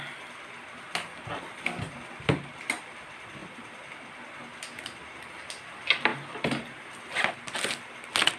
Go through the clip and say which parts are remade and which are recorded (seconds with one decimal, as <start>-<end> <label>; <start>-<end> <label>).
0.0-3.4 recorded; 3.4-3.9 remade; 3.9-8.4 recorded